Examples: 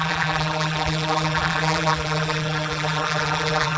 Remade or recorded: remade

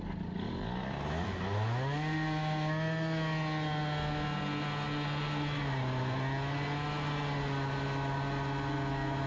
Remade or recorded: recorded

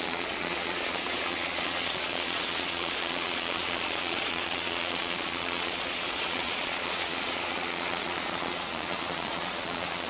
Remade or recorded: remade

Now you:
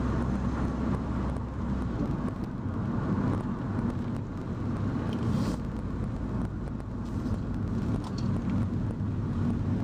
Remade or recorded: recorded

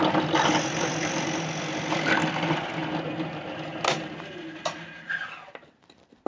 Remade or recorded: recorded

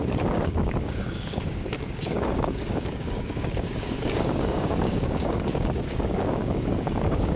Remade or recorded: remade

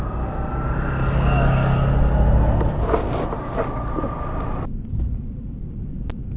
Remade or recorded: recorded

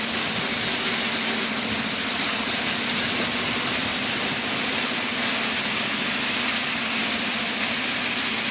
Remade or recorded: remade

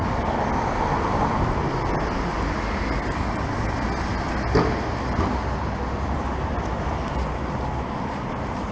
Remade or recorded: recorded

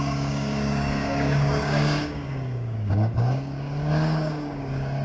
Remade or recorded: remade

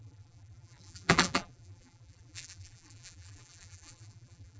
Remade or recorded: remade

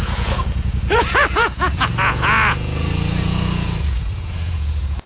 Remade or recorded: remade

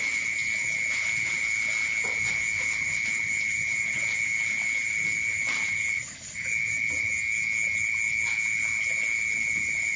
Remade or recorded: recorded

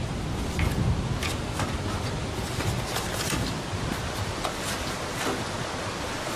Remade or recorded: recorded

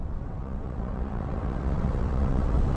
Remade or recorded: remade